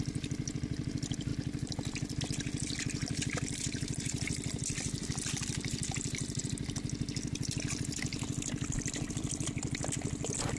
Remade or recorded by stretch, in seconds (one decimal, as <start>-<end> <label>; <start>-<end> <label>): 0.0-1.3 recorded; 1.3-2.2 remade; 2.2-3.0 recorded; 3.0-6.4 remade; 6.4-10.6 recorded